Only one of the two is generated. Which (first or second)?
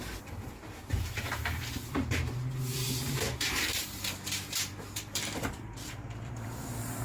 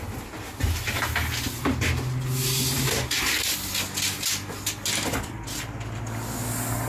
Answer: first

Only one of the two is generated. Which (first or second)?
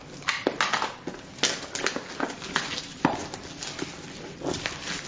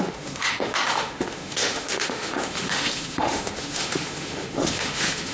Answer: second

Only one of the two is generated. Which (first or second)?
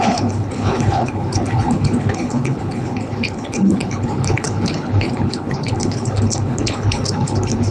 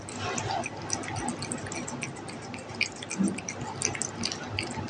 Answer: first